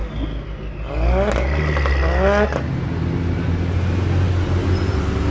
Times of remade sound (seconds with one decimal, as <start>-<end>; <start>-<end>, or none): none